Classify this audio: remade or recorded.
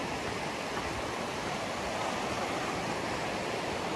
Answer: recorded